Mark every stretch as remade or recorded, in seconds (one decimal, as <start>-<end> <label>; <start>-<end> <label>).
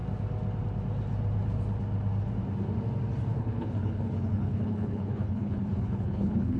0.0-3.3 recorded; 3.3-6.6 remade